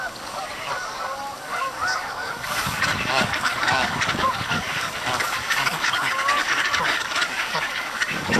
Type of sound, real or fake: fake